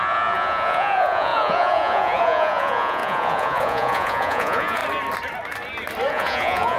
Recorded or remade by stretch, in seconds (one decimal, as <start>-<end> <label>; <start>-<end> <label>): 0.0-4.8 remade; 4.8-6.1 recorded; 6.1-6.8 remade